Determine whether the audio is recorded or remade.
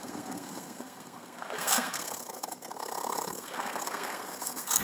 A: remade